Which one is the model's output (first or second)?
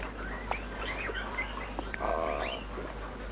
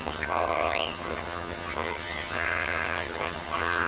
second